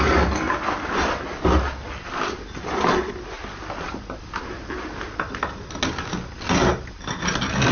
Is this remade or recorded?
recorded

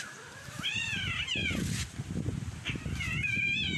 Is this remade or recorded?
recorded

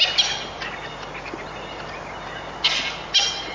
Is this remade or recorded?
recorded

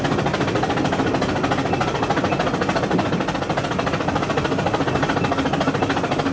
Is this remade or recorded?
recorded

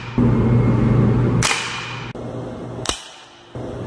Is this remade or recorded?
recorded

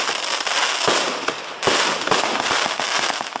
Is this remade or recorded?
remade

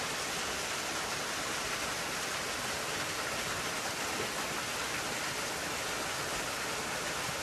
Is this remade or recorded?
recorded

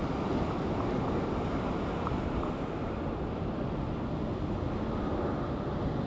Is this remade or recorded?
recorded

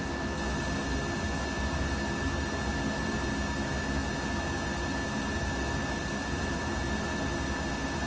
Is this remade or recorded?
recorded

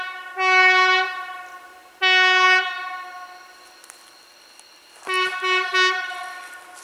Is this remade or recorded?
recorded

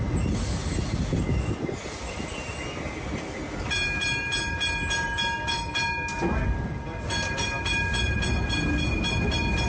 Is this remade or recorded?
recorded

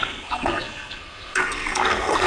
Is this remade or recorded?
remade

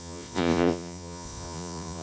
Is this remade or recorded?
remade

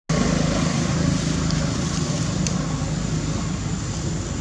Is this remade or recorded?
recorded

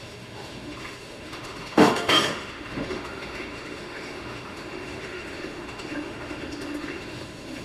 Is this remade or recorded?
remade